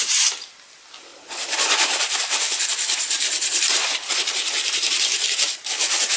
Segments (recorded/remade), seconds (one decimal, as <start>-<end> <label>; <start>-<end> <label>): 0.0-6.2 recorded

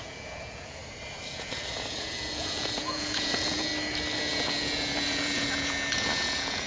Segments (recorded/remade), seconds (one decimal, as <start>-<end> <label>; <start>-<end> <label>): 0.0-0.8 remade; 0.8-1.3 recorded; 1.3-3.7 remade; 3.7-4.3 recorded; 4.3-6.7 remade

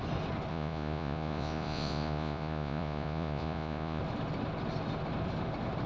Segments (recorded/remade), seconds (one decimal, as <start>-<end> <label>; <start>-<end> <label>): 0.0-0.5 recorded; 0.5-4.0 remade; 4.0-5.9 recorded

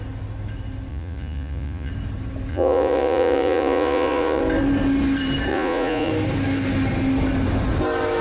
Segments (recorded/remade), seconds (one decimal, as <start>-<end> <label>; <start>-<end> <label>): 0.0-0.9 recorded; 0.9-1.9 remade; 1.9-2.5 recorded; 2.5-4.4 remade; 4.4-5.5 recorded; 5.5-6.1 remade; 6.1-8.2 recorded

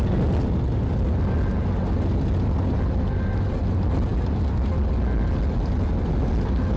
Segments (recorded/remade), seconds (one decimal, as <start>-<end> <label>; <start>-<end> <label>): 0.0-6.8 recorded